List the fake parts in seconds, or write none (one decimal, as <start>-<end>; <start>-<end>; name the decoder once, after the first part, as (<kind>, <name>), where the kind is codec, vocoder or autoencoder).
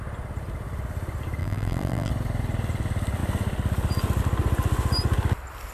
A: 1.4-2.1 (vocoder, BigVGAN v2)